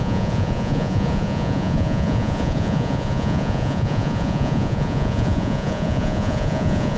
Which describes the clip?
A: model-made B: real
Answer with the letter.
A